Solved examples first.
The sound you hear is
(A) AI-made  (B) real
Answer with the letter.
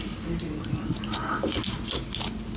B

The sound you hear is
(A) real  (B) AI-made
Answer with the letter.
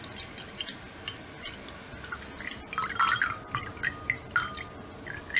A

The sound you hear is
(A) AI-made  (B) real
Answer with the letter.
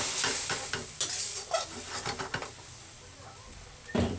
B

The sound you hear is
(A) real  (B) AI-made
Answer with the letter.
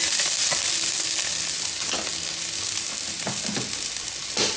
A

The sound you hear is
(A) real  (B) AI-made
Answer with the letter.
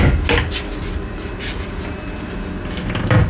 A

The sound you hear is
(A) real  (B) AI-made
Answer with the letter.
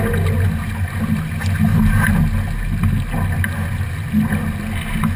A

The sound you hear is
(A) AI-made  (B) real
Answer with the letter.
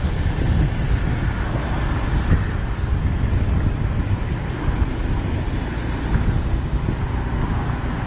B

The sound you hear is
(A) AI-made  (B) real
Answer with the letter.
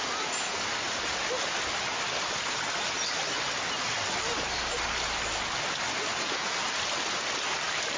B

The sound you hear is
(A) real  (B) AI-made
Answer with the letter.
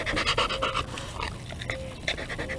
A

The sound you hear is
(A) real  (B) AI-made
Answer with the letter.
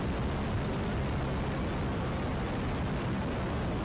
A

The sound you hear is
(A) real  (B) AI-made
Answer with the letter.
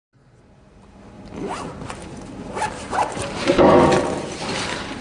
A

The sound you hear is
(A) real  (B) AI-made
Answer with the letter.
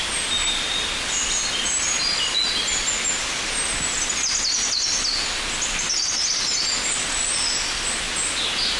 A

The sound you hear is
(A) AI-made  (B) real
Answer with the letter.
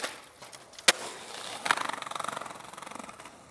B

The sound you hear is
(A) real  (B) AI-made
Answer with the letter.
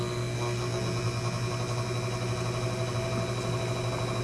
A